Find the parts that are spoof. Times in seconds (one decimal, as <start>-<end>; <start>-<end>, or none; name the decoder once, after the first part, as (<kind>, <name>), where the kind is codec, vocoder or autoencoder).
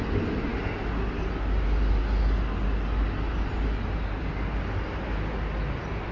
none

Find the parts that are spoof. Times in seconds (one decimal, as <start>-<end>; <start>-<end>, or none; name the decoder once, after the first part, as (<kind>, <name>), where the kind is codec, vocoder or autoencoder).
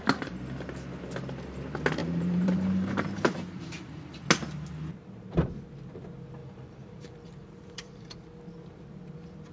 2.0-4.3 (vocoder, BigVGAN v2); 6.4-8.1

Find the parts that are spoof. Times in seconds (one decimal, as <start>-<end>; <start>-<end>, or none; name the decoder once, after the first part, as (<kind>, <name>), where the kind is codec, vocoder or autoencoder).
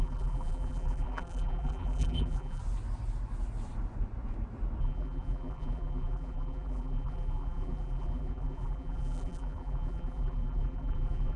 0.0-2.6 (vocoder, BigVGAN v2); 4.8-11.4